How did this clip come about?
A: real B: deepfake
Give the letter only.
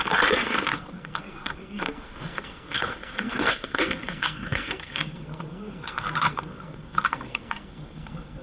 B